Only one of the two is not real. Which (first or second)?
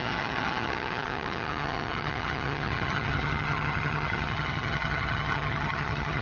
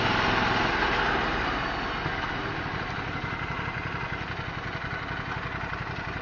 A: first